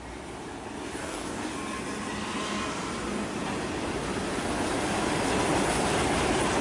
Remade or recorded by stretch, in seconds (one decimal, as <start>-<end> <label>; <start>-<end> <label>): 0.0-1.0 recorded; 1.0-1.5 remade; 1.5-6.6 recorded